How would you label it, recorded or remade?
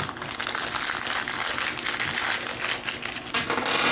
recorded